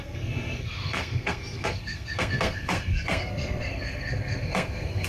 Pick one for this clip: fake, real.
fake